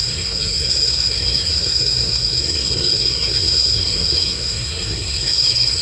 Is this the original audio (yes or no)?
no